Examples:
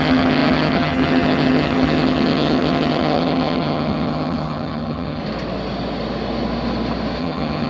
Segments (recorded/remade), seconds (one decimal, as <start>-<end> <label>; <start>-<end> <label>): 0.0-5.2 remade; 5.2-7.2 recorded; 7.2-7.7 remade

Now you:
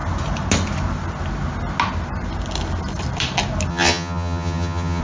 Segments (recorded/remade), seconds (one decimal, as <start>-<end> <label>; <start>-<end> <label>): 0.0-3.7 recorded; 3.7-5.0 remade

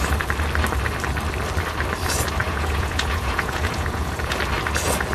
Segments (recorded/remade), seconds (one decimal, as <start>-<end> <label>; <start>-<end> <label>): 0.0-2.4 recorded; 2.4-4.4 remade; 4.4-5.1 recorded

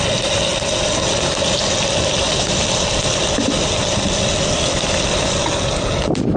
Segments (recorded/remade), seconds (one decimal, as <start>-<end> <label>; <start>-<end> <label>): 0.0-6.4 recorded

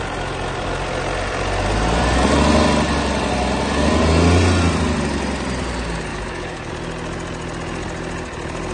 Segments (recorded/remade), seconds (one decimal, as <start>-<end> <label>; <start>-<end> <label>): 0.0-6.1 recorded; 6.1-6.7 remade; 6.7-8.7 recorded

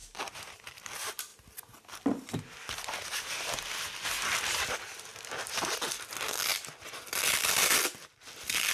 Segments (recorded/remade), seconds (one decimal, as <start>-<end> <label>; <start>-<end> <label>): 0.0-0.5 recorded; 0.5-1.3 remade; 1.3-2.9 recorded; 2.9-5.1 remade; 5.1-7.1 recorded; 7.1-8.7 remade

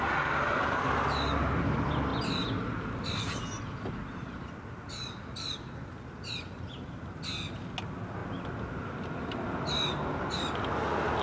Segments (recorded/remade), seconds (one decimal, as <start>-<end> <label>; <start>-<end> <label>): 0.0-11.2 recorded

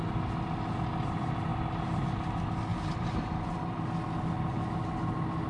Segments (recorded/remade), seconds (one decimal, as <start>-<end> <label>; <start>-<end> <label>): 0.0-2.7 recorded; 2.7-3.8 remade; 3.8-5.5 recorded